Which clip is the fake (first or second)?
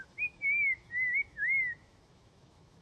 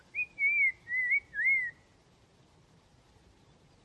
first